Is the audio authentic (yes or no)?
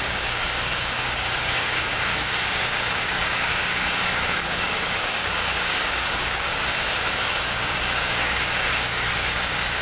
no